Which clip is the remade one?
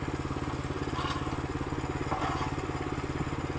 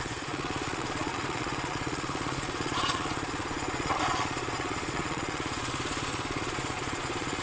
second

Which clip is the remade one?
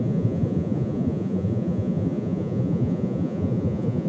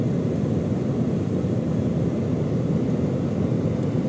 first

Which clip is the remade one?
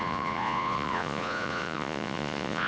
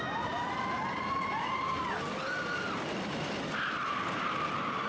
first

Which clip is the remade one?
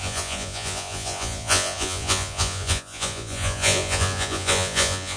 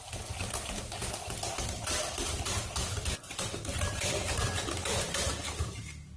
first